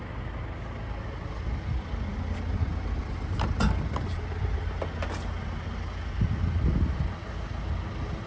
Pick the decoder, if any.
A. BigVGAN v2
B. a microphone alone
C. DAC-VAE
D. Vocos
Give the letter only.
B